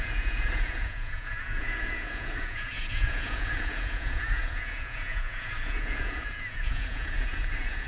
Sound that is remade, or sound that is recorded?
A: remade